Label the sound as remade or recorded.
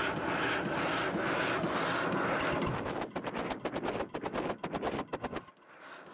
recorded